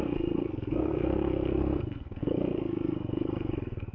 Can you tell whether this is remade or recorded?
remade